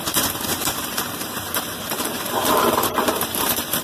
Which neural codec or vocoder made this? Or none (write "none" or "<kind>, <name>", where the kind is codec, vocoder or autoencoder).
vocoder, BigVGAN v2